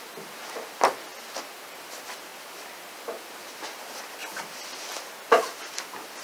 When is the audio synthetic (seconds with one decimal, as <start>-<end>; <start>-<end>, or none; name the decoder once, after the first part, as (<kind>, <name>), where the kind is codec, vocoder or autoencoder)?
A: none